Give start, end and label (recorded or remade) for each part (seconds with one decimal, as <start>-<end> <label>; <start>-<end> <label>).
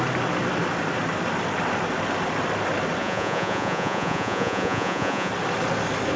0.0-3.0 recorded; 3.0-5.3 remade; 5.3-6.2 recorded